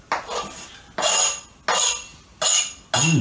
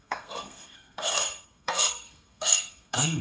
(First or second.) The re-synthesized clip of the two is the second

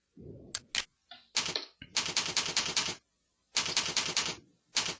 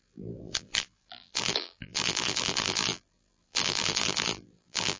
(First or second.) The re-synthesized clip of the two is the second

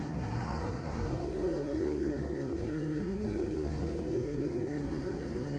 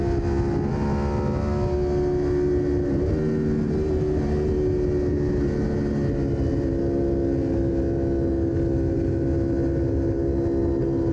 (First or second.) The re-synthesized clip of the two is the first